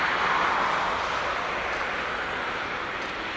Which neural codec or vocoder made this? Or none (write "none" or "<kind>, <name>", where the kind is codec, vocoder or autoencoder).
vocoder, BigVGAN v2